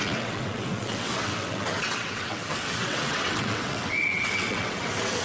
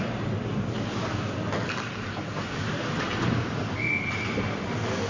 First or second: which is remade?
first